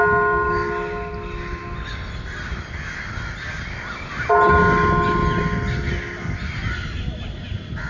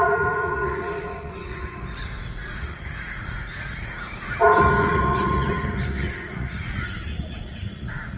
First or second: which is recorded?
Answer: first